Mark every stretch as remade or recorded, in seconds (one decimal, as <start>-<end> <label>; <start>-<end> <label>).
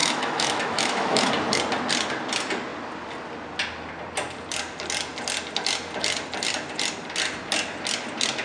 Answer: 0.0-1.3 remade; 1.3-8.4 recorded